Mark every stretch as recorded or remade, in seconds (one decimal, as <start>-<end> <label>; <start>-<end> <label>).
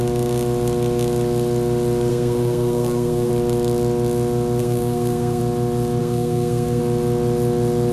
0.0-2.1 recorded; 2.1-3.3 remade; 3.3-4.6 recorded; 4.6-5.4 remade; 5.4-6.0 recorded; 6.0-6.8 remade; 6.8-7.9 recorded